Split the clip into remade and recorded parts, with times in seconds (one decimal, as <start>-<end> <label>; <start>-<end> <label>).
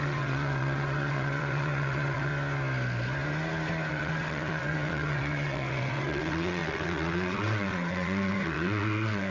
0.0-2.3 remade; 2.3-3.9 recorded; 3.9-9.3 remade